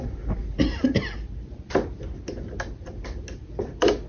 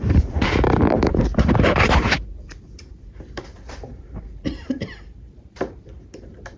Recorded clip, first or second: first